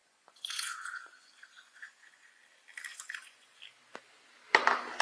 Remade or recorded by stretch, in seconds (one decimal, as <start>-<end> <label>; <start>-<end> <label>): 0.0-2.4 remade; 2.4-2.9 recorded; 2.9-3.6 remade; 3.6-5.0 recorded